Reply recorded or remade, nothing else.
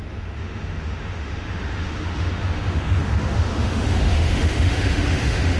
remade